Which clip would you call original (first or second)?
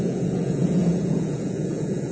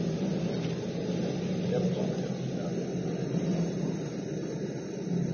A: second